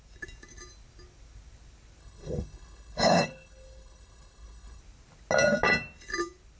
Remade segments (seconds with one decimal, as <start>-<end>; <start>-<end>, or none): 2.0-4.8